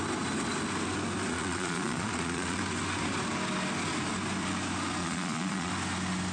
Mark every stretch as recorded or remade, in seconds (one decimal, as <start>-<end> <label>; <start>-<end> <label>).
0.0-1.3 recorded; 1.3-2.6 remade; 2.6-5.0 recorded; 5.0-5.7 remade; 5.7-6.3 recorded